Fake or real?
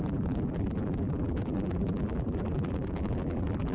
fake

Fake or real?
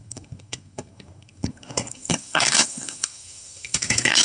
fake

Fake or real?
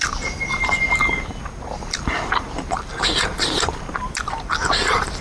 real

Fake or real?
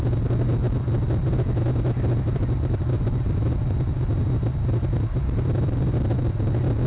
real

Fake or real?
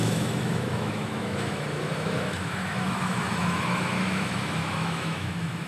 fake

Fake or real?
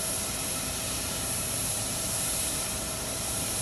fake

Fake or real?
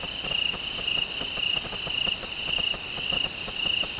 real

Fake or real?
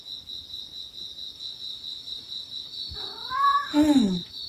real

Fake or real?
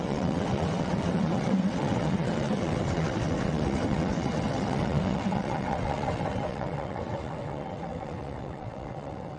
fake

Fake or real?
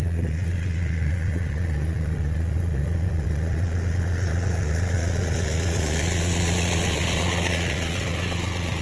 fake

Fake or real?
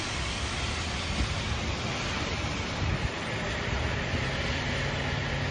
real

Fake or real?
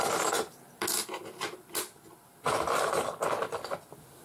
real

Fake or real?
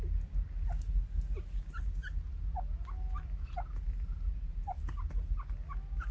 real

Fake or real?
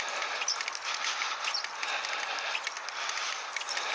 real